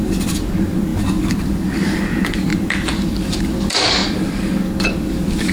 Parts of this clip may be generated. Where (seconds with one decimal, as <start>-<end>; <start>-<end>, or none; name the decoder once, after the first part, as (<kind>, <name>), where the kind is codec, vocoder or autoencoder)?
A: 0.0-5.5 (codec, DAC)